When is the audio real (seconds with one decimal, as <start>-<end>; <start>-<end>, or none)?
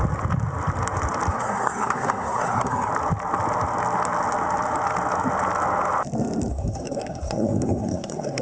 0.0-1.3; 2.9-6.5